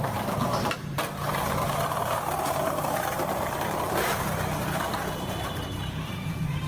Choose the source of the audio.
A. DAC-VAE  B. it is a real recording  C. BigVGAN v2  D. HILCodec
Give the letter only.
C